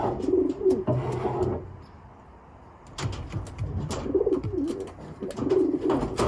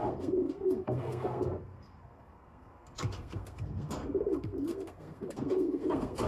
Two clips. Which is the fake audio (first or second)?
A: second